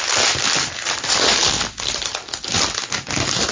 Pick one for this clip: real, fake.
real